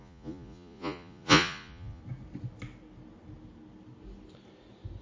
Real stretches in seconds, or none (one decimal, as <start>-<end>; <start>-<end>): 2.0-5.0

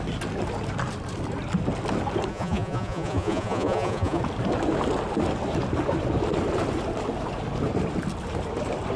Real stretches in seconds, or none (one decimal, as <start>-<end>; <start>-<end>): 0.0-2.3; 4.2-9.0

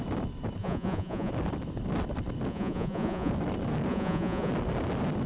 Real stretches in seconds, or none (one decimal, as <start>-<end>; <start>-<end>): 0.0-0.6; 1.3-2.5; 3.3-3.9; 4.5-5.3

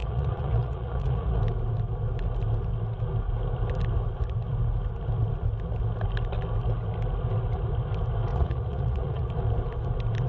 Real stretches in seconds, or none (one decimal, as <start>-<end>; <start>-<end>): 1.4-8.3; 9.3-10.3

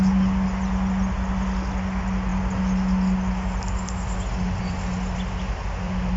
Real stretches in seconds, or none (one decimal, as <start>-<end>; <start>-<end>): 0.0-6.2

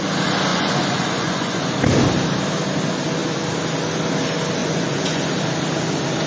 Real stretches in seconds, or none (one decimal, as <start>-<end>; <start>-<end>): 0.0-0.5; 1.7-4.6; 5.3-6.3

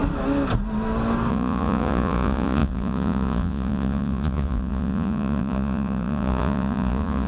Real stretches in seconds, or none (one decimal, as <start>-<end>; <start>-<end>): 0.0-1.3